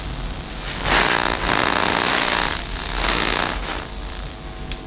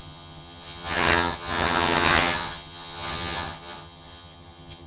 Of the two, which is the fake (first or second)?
second